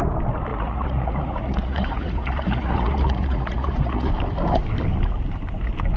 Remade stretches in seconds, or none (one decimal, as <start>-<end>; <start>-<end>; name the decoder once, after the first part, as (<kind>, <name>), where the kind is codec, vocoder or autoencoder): 0.5-4.1 (vocoder, Vocos)